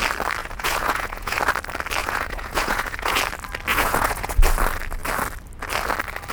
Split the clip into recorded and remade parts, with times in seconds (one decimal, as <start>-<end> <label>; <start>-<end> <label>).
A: 0.0-0.4 recorded; 0.4-1.4 remade; 1.4-2.0 recorded; 2.0-3.2 remade; 3.2-3.7 recorded; 3.7-4.4 remade; 4.4-6.3 recorded